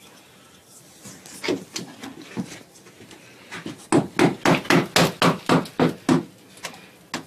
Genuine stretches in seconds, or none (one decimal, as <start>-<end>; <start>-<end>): 0.0-7.3